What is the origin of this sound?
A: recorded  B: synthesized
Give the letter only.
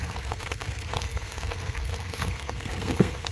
B